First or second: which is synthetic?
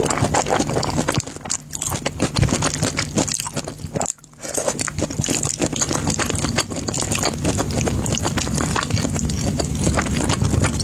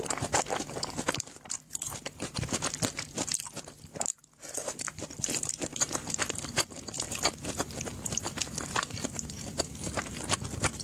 second